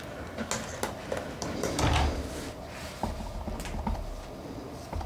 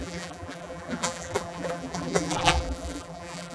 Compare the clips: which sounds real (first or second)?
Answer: first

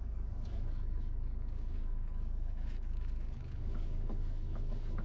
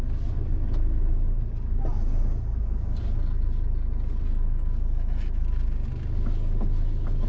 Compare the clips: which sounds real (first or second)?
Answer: second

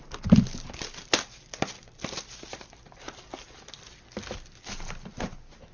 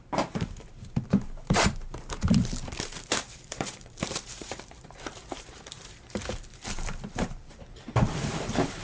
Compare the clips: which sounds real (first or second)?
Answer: first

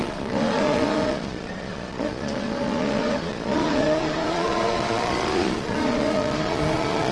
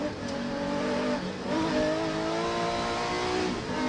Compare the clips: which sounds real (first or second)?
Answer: second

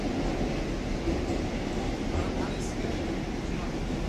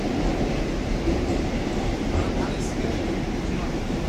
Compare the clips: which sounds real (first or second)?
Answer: first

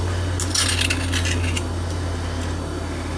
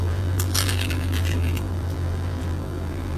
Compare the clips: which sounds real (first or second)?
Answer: first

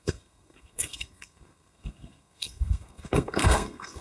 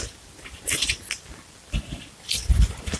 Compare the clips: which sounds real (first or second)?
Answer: second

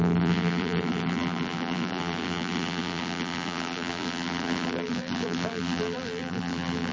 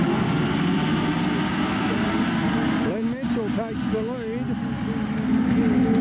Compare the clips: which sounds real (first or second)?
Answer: second